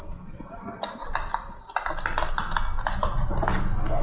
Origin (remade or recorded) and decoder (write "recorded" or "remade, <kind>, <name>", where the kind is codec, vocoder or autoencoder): recorded